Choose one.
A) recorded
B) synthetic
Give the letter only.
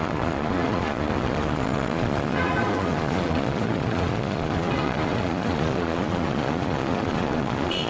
B